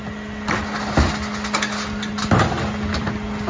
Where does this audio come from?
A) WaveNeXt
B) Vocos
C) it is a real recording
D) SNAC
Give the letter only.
C